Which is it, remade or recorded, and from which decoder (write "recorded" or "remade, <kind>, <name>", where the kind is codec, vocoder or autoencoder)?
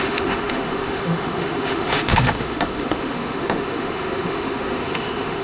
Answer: remade, autoencoder, DAC-VAE